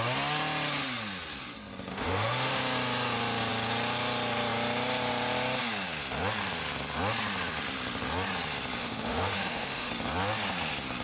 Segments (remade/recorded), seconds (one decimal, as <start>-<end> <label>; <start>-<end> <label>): 0.0-1.9 recorded; 1.9-2.6 remade; 2.6-8.8 recorded; 8.8-9.9 remade; 9.9-11.0 recorded